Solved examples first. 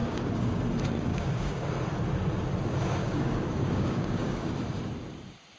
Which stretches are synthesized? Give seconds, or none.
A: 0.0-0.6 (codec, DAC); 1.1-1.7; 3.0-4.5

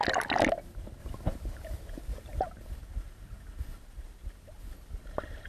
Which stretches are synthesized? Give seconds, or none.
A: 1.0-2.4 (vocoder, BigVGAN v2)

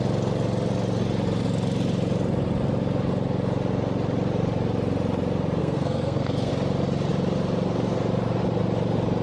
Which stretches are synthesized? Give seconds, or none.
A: 5.6-6.5 (codec, SNAC)